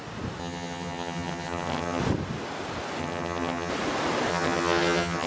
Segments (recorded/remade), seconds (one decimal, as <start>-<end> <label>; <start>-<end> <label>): 0.0-0.4 recorded; 0.4-2.0 remade; 2.0-3.0 recorded; 3.0-3.7 remade; 3.7-4.3 recorded; 4.3-5.3 remade